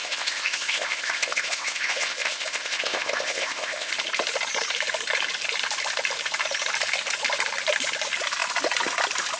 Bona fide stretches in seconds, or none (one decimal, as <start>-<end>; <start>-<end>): 3.9-9.4